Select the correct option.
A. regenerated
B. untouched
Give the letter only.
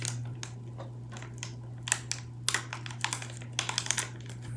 B